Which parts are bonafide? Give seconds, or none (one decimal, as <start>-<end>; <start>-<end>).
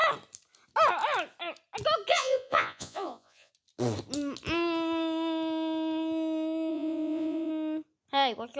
0.0-2.1; 3.5-6.7; 7.5-8.6